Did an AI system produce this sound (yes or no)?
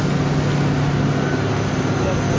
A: no